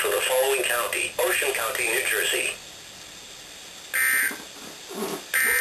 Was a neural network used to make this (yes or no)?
no